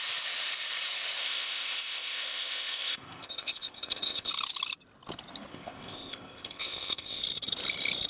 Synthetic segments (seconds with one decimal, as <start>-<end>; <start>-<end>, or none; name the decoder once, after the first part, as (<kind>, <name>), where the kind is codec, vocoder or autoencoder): 1.2-4.3 (codec, ZipCodec); 5.5-7.2